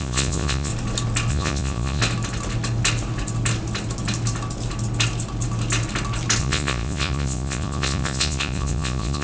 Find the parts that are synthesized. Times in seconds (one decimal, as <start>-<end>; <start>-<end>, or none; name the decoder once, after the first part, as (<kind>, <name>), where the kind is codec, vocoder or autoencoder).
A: 0.0-0.7 (vocoder, Vocos); 1.3-2.0; 6.4-9.2